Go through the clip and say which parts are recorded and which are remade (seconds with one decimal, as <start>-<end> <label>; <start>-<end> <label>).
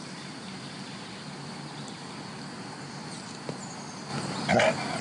0.0-5.0 recorded